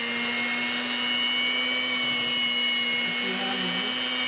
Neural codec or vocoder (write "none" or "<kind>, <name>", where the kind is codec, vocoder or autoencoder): none